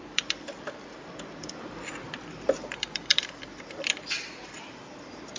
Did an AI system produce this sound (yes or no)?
yes